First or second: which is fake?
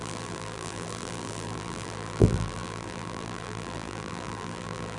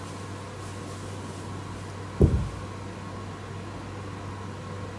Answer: first